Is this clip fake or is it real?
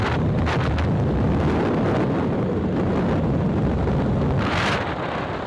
real